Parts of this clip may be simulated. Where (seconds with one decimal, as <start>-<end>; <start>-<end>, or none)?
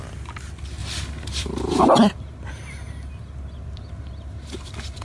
none